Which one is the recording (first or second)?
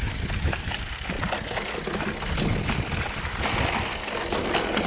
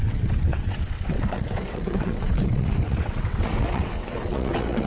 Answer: first